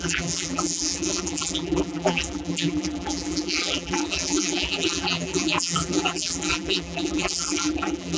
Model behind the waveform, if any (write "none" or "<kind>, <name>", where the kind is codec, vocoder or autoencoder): vocoder, BigVGAN v2